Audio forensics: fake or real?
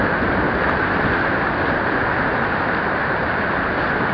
real